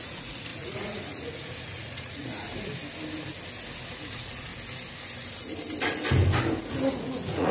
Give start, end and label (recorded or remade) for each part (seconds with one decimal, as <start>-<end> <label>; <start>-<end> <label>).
0.0-2.5 remade; 2.5-3.9 recorded; 3.9-4.5 remade; 4.5-6.9 recorded; 6.9-7.5 remade